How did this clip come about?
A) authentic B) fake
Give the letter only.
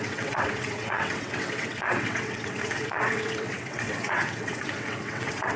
B